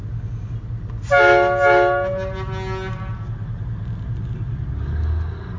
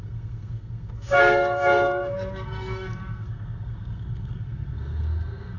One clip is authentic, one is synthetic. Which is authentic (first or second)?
first